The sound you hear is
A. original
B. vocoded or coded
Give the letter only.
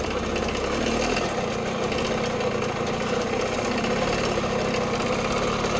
A